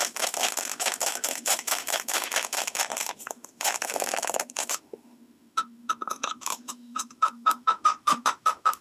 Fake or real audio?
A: fake